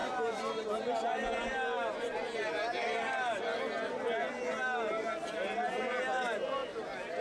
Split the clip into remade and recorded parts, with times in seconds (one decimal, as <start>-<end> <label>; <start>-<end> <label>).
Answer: 0.0-7.2 recorded